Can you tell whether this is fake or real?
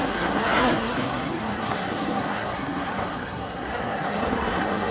fake